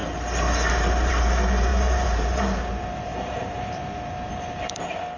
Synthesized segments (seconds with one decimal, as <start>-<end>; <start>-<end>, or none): 0.7-5.2

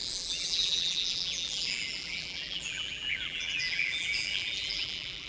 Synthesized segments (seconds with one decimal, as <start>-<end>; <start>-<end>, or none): 0.0-5.3

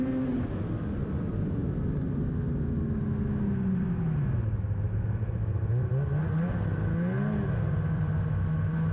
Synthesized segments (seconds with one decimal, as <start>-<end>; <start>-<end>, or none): 1.0-1.9